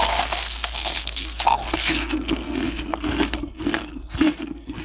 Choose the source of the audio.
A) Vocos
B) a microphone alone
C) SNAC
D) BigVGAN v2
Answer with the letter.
C